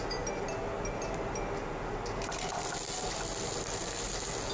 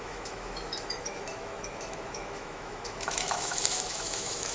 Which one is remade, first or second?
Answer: second